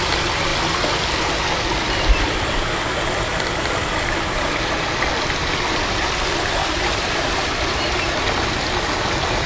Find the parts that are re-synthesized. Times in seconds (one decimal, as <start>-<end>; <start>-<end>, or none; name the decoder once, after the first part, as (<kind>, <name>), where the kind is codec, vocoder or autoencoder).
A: 6.6-8.1 (vocoder, BigVGAN v2)